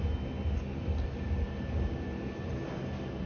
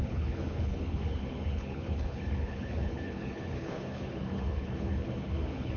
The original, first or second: first